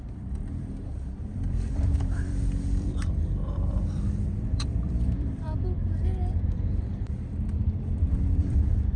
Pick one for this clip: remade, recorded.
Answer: remade